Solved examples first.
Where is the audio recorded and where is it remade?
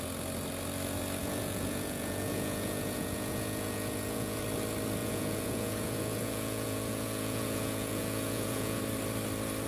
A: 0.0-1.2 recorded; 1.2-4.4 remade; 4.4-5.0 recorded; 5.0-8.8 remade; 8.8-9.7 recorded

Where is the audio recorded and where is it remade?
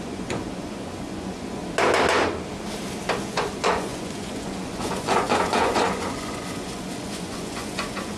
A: 0.0-1.6 remade; 1.6-3.2 recorded; 3.2-8.2 remade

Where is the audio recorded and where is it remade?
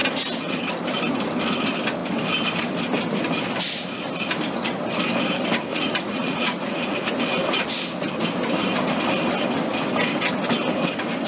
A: 0.0-5.7 recorded; 5.7-7.1 remade; 7.1-11.3 recorded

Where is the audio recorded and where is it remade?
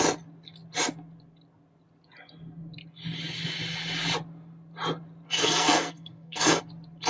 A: 0.0-5.4 recorded; 5.4-6.6 remade; 6.6-7.1 recorded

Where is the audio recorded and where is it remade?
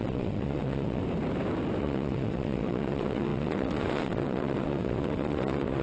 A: 0.0-1.0 remade; 1.0-1.8 recorded; 1.8-5.8 remade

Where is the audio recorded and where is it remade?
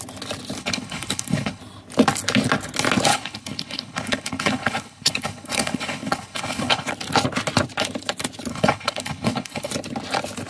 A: 0.0-0.6 recorded; 0.6-1.6 remade; 1.6-3.1 recorded; 3.1-6.9 remade; 6.9-8.5 recorded; 8.5-9.7 remade; 9.7-10.5 recorded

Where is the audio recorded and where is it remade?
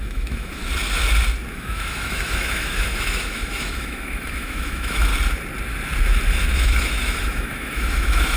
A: 0.0-0.6 remade; 0.6-1.5 recorded; 1.5-5.1 remade; 5.1-6.4 recorded; 6.4-8.4 remade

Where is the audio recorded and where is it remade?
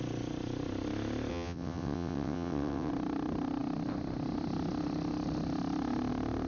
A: 0.0-1.3 recorded; 1.3-2.9 remade; 2.9-6.5 recorded